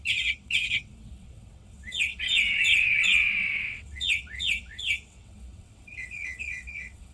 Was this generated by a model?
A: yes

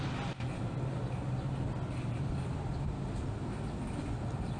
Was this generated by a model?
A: no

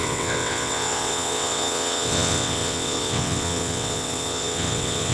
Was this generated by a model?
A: yes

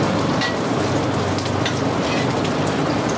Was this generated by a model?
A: no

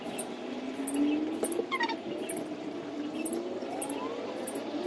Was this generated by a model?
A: no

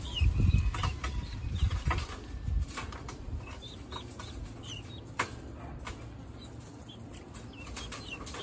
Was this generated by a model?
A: no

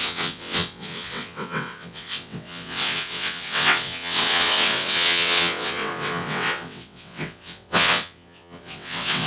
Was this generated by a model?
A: yes